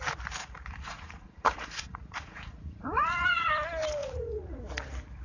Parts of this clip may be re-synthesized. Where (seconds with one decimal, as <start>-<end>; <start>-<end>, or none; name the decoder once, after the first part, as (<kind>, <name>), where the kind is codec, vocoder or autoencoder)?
0.4-3.5 (vocoder, Vocos); 4.0-4.6